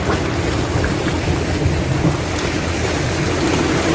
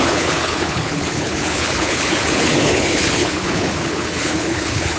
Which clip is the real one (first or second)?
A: first